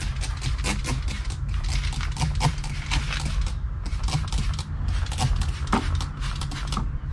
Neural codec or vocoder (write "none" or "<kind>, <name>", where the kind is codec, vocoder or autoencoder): none